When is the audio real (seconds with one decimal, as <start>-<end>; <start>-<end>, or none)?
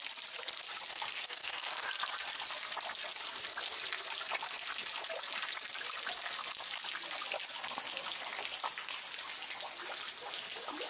0.0-0.9; 1.9-10.9